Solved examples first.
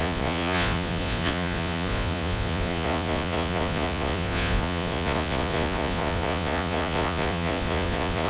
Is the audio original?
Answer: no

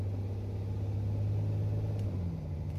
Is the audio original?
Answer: yes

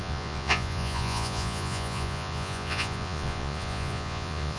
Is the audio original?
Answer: no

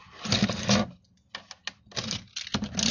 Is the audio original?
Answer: yes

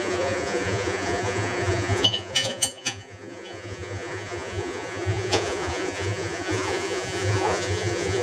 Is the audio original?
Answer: no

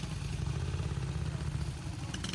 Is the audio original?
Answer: yes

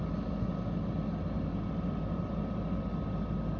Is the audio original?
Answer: yes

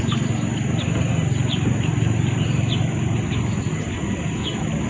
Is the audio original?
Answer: yes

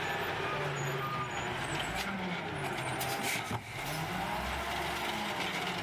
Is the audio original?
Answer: yes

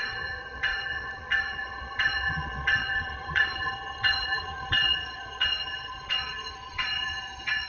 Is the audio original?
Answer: no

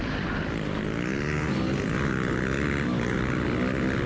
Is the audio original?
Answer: yes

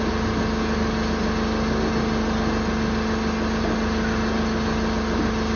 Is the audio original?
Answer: yes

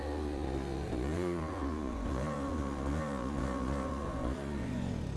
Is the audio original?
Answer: no